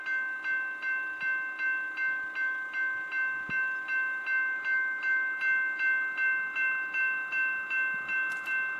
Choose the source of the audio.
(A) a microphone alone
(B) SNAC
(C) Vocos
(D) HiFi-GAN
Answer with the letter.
A